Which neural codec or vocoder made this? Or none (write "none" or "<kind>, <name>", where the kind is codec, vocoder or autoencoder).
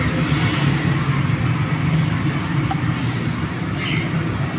none